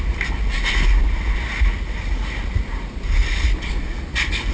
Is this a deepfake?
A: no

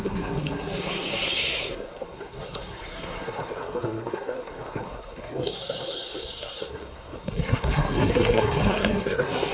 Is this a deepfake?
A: yes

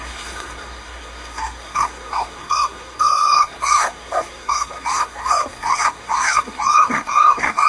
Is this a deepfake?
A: yes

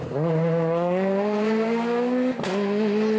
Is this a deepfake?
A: no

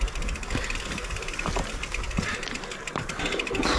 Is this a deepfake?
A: no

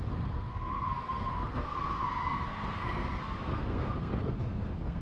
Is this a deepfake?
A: yes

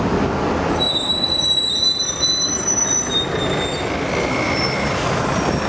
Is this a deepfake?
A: no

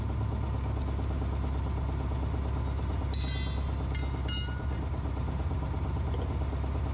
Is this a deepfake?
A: no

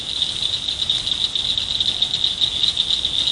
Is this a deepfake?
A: no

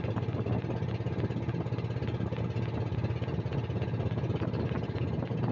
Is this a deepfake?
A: no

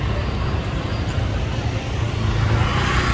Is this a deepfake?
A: no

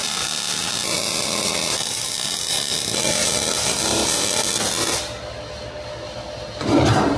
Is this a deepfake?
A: no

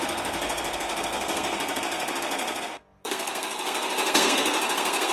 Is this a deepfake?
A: yes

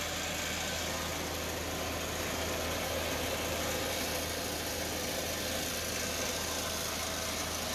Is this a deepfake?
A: no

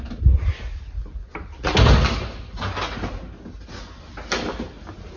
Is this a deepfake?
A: no